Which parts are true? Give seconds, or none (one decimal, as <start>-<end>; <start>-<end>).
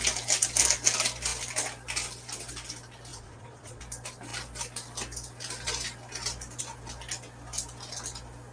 0.0-3.1; 3.8-8.5